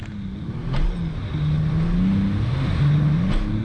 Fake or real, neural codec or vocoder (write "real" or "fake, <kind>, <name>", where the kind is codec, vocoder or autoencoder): real